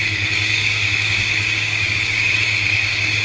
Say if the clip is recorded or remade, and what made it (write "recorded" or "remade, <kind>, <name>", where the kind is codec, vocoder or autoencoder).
remade, codec, DAC